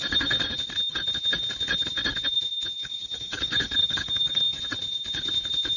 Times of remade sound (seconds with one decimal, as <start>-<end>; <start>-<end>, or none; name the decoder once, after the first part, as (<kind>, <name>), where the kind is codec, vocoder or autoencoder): 2.8-4.6 (codec, DAC)

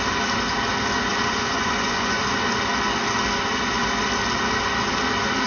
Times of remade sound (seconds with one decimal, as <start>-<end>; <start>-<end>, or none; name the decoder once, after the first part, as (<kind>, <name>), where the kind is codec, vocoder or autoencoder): 1.1-2.2 (vocoder, Vocos)

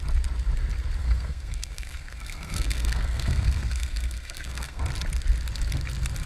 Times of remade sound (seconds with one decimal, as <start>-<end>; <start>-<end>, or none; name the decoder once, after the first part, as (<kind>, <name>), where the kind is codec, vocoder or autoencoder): 1.0-4.8 (codec, SNAC)

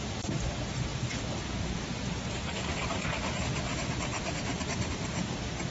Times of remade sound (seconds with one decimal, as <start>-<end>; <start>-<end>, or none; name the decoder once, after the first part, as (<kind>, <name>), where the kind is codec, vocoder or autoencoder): none